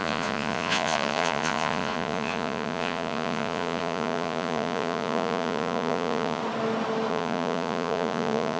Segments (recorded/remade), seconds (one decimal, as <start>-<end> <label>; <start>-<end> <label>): 0.0-6.4 remade; 6.4-7.1 recorded; 7.1-8.6 remade